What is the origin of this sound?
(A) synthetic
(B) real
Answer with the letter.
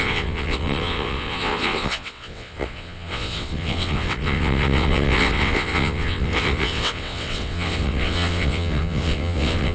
A